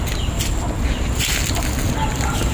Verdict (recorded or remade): recorded